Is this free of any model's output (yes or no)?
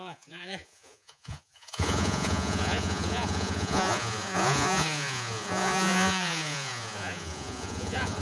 no